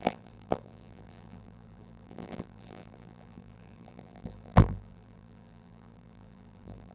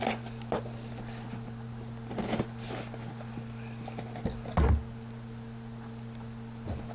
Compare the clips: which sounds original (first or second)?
second